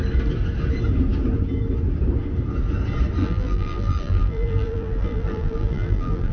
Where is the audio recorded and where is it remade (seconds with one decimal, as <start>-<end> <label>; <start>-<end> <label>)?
0.0-3.2 recorded; 3.2-6.3 remade